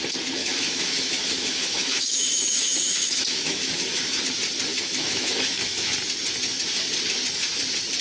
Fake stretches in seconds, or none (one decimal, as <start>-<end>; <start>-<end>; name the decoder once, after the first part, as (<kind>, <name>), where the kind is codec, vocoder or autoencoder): 0.4-4.2 (autoencoder, DAC-VAE); 4.7-5.9